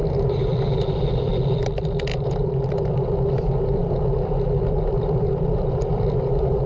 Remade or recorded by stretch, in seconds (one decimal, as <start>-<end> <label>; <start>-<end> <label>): 0.0-6.7 remade